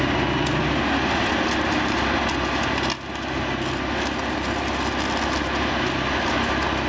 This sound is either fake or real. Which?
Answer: real